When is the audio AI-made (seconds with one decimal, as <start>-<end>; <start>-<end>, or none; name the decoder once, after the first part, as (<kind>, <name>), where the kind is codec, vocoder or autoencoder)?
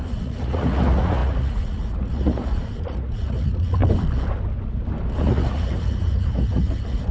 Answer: 0.0-3.8 (vocoder, Vocos); 5.2-7.1